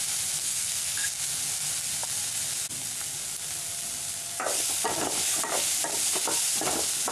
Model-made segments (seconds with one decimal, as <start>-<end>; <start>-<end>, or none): 0.4-1.1

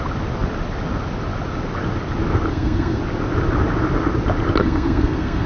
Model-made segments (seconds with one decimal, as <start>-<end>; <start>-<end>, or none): 2.5-3.0; 4.6-5.5

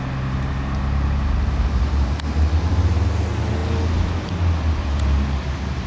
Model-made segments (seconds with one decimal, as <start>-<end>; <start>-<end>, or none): none

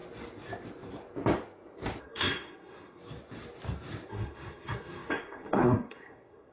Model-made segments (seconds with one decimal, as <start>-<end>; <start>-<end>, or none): 2.0-3.0; 4.1-6.5

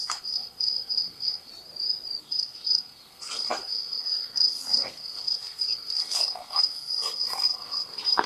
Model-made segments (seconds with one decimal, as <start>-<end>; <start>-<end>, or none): 0.0-1.5; 2.2-8.3

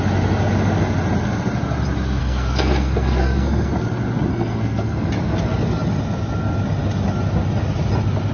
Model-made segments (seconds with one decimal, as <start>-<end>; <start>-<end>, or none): 2.2-3.7; 4.3-5.1

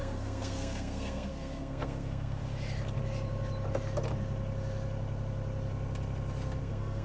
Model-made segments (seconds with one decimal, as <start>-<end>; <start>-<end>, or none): 0.0-2.4; 6.6-7.0